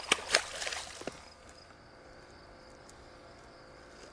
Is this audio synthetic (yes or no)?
no